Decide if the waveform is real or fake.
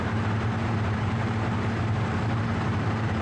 fake